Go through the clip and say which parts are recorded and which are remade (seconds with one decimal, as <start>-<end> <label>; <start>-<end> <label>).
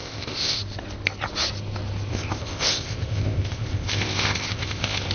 0.0-0.6 remade; 0.6-2.1 recorded; 2.1-5.1 remade